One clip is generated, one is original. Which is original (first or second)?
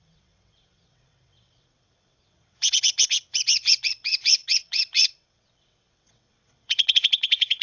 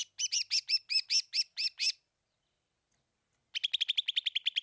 second